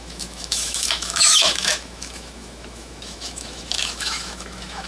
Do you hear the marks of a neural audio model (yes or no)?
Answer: yes